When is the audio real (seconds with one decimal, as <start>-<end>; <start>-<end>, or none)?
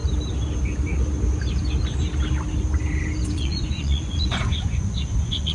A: 0.0-3.3